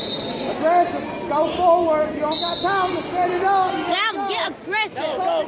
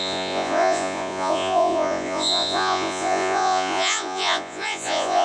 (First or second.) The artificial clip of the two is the second